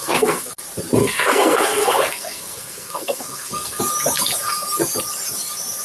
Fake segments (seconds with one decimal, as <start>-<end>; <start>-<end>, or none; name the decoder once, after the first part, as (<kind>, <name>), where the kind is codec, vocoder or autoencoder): 0.0-0.6 (codec, SNAC); 1.0-3.8